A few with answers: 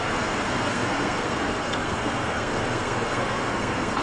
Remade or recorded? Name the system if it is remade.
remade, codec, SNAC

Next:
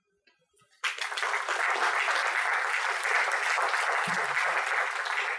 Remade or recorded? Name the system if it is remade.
recorded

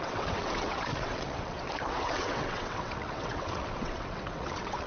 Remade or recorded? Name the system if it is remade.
remade, vocoder, WaveNeXt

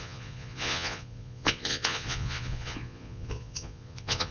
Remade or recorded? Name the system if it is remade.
remade, vocoder, Vocos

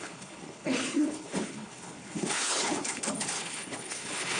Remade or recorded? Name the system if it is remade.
remade, codec, HILCodec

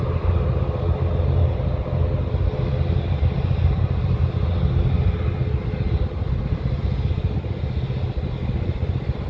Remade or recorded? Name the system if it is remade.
recorded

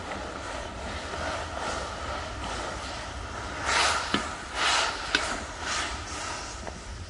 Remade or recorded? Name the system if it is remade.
recorded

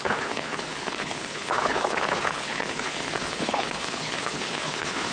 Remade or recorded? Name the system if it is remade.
remade, codec, HILCodec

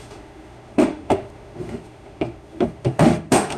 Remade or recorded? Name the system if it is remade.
remade, autoencoder, DAC-VAE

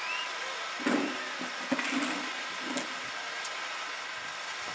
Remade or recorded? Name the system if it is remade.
recorded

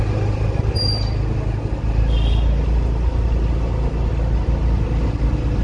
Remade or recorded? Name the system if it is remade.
recorded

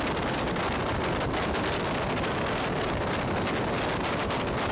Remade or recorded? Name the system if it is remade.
recorded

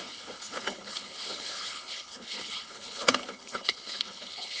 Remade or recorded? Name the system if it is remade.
remade, codec, HILCodec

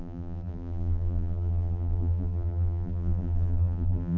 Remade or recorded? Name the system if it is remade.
remade, vocoder, BigVGAN v2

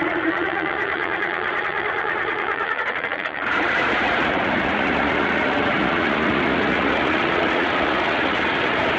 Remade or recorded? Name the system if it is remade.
remade, vocoder, Vocos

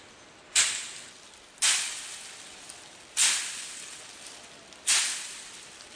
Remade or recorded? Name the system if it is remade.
recorded